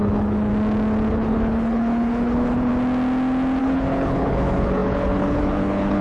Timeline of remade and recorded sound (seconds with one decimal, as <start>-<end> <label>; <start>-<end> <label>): 0.0-0.5 remade; 0.5-1.1 recorded; 1.1-2.7 remade; 2.7-3.6 recorded; 3.6-6.0 remade